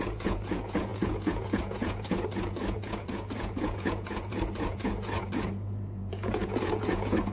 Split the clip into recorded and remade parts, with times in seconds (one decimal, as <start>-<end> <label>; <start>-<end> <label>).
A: 0.0-7.3 remade